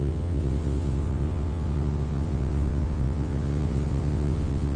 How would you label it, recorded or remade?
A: remade